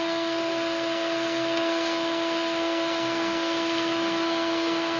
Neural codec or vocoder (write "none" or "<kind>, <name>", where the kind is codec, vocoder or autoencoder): codec, SNAC